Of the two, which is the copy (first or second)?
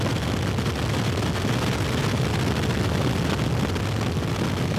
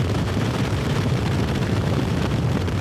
second